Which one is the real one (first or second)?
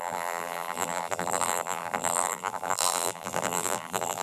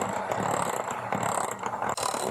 second